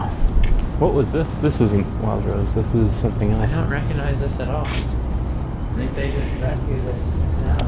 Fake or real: real